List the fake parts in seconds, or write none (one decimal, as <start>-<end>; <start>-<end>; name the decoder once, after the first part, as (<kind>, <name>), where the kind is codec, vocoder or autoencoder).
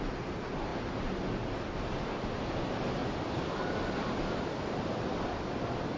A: none